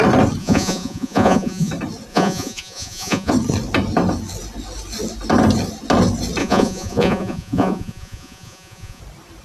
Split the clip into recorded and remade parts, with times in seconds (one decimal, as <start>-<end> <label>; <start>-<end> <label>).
0.0-0.4 recorded; 0.4-1.7 remade; 1.7-2.1 recorded; 2.1-3.3 remade; 3.3-6.4 recorded; 6.4-9.0 remade; 9.0-9.4 recorded